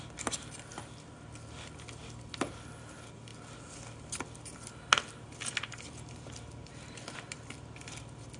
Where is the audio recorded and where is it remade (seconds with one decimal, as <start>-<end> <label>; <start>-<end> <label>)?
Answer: 0.0-8.4 recorded